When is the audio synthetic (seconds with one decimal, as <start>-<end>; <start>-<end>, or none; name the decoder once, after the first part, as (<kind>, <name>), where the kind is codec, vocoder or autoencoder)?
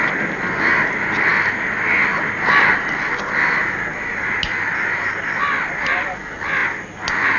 none